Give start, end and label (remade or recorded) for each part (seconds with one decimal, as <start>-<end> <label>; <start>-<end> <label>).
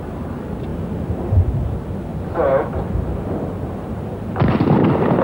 0.0-5.2 recorded